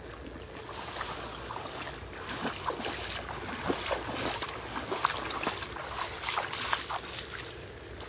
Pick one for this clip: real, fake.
real